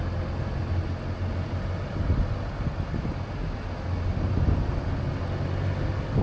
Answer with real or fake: real